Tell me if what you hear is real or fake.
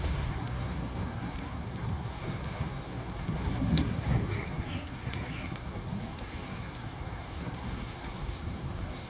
fake